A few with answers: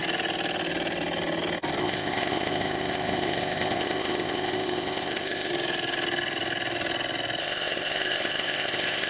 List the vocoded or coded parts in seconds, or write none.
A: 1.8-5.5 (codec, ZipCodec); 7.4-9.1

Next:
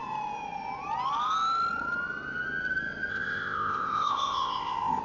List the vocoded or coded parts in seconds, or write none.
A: 3.1-5.0 (codec, ZipCodec)

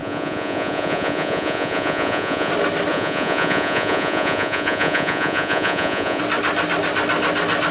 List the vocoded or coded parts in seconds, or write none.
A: 0.0-2.5 (vocoder, Vocos); 2.9-6.2

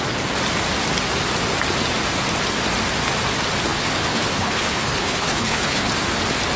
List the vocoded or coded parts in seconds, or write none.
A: 3.7-5.9 (codec, HILCodec)

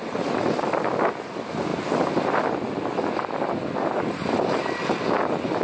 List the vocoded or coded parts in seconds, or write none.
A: none